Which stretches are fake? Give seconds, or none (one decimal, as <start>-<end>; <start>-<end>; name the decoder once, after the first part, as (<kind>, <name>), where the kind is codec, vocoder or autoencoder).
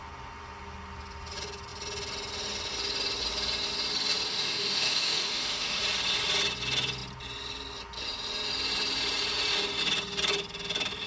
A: 4.3-5.8 (autoencoder, DAC-VAE)